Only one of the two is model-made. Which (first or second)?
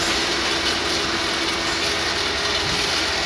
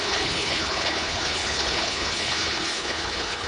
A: second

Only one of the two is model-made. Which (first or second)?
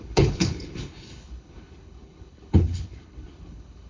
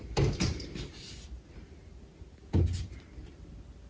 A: first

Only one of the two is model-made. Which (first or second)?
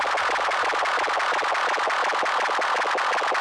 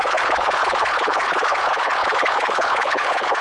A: second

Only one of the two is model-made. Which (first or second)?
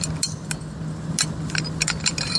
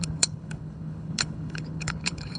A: second